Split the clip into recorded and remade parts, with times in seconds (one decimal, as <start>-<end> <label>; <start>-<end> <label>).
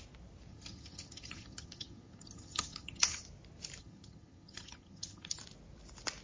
0.0-0.5 recorded; 0.5-3.2 remade; 3.2-3.8 recorded; 3.8-5.4 remade; 5.4-6.2 recorded